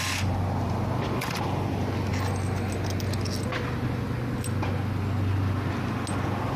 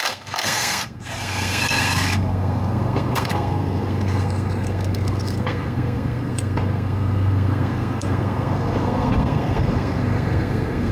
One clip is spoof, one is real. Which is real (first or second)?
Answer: first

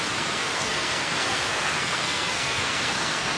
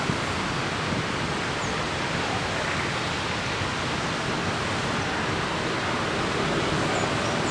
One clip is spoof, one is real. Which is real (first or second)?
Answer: second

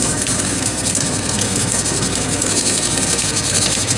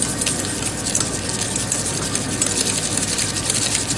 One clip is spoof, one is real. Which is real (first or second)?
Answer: second